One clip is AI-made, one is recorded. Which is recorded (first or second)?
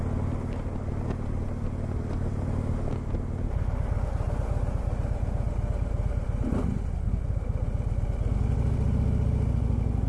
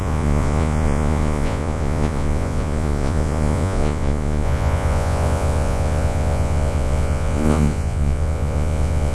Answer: first